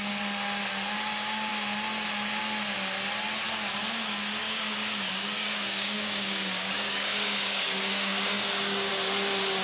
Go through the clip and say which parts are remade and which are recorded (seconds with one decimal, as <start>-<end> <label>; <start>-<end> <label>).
0.0-4.4 recorded; 4.4-8.9 remade; 8.9-9.6 recorded